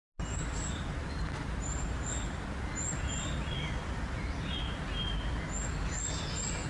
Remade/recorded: recorded